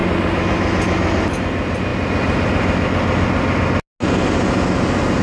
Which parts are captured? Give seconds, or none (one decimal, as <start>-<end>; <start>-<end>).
0.0-5.2